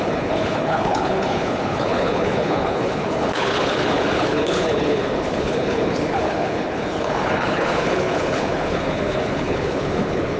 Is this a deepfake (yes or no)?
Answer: yes